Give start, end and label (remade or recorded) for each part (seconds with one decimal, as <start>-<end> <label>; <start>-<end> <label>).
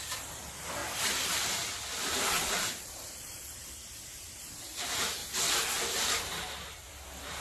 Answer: 0.0-7.4 remade